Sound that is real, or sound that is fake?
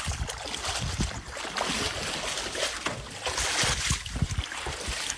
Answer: real